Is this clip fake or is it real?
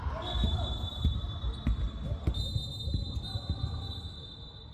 real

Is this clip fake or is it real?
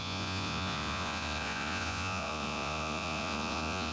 fake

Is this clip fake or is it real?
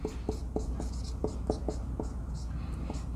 real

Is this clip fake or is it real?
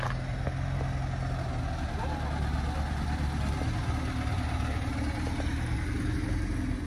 real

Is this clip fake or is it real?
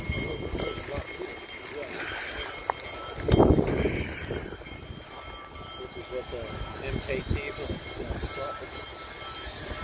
real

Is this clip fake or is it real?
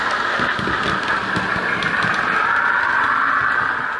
real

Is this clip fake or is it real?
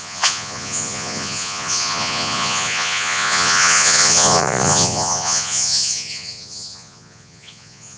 fake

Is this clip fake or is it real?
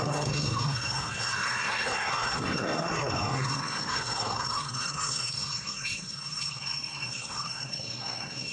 fake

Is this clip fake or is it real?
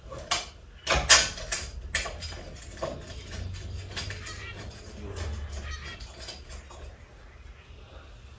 real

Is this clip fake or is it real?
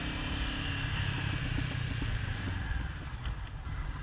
real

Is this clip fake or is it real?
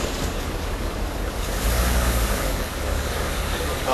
fake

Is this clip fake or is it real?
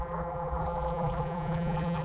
fake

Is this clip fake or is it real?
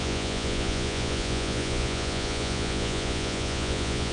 fake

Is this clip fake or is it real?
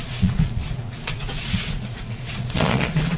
fake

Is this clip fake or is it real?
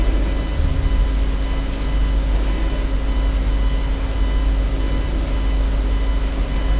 real